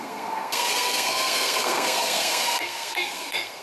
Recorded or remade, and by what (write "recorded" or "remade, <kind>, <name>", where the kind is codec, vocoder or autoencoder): remade, codec, SNAC